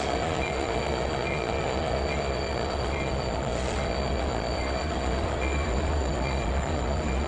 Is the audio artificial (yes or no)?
yes